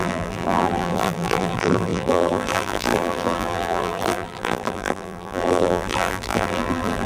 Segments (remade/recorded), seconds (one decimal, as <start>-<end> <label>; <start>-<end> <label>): 0.0-7.1 remade